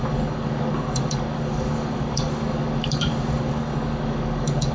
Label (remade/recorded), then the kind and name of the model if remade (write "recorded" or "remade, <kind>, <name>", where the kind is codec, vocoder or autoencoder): remade, codec, DAC